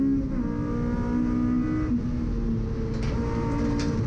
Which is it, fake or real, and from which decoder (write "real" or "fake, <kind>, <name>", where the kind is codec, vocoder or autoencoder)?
real